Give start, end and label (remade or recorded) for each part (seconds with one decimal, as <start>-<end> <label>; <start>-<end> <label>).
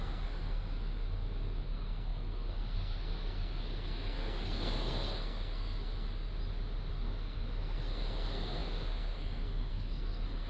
0.0-6.3 remade; 6.3-6.9 recorded; 6.9-10.5 remade